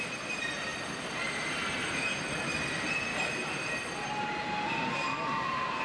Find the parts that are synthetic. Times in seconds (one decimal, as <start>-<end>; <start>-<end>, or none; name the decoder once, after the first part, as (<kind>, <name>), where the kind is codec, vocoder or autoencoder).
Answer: none